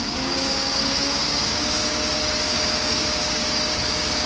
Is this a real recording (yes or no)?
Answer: no